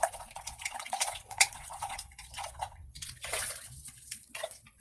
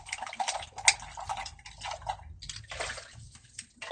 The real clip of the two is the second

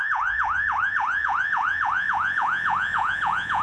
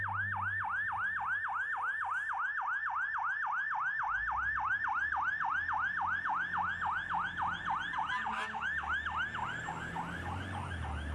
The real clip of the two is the second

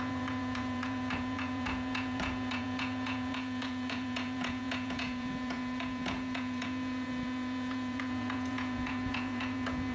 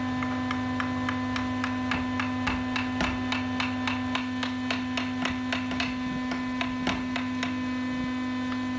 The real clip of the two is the second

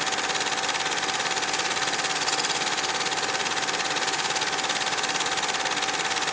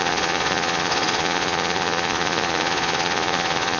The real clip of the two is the first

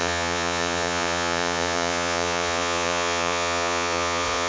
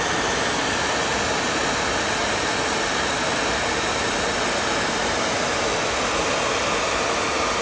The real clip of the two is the second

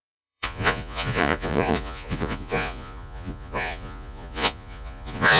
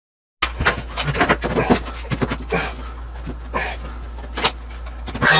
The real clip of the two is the second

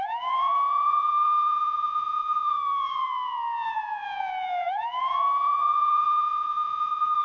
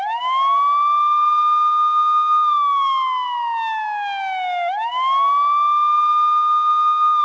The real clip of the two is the second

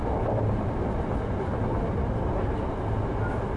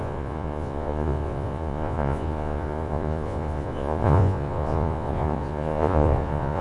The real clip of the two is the first